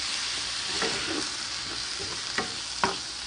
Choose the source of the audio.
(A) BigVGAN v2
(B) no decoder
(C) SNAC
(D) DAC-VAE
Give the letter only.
B